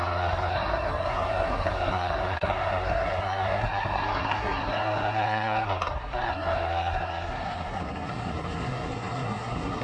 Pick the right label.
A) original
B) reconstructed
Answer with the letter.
B